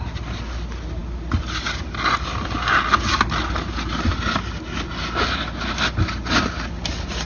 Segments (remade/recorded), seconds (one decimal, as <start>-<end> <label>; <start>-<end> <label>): 0.0-7.3 recorded